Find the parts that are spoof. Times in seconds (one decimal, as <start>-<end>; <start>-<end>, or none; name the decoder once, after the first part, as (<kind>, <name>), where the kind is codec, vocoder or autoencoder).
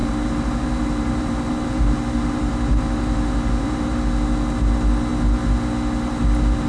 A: 0.0-4.0 (vocoder, BigVGAN v2)